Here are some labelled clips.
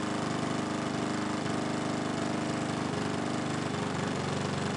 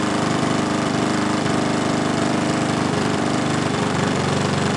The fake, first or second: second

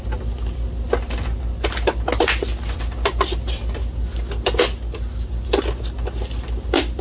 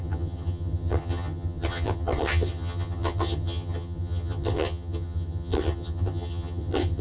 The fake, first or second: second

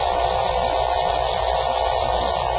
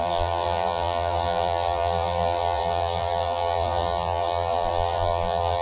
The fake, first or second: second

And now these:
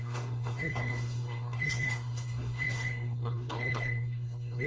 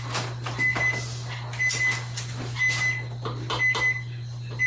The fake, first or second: first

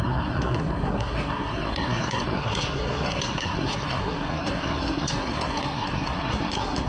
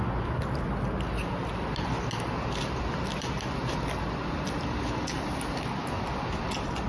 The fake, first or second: first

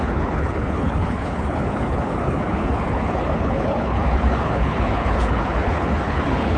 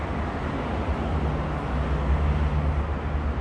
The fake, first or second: first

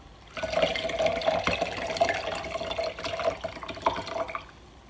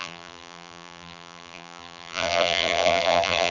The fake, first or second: second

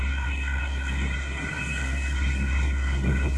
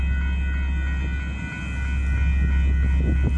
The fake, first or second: first